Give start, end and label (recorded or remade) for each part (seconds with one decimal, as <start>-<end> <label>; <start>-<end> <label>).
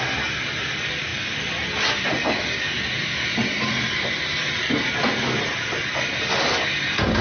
0.0-7.2 recorded